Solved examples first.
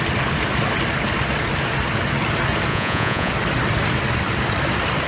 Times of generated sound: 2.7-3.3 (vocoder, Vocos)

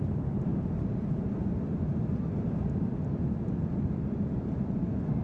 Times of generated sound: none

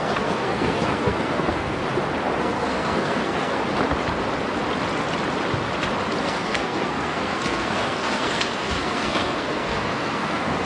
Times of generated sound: 0.0-1.8 (codec, SNAC); 2.4-3.6; 6.2-10.7

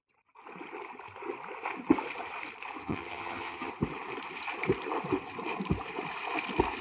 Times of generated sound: 2.8-3.7 (vocoder, HiFi-GAN)

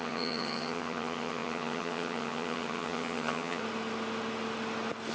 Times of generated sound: 0.0-3.6 (vocoder, HiFi-GAN)